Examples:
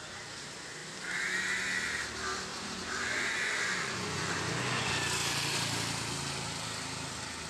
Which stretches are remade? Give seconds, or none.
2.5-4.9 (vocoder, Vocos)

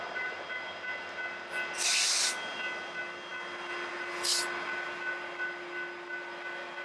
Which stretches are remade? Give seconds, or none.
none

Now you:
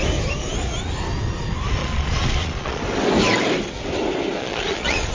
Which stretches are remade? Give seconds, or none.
1.8-2.8 (vocoder, Vocos); 4.4-5.1